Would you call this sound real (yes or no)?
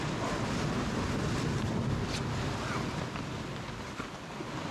yes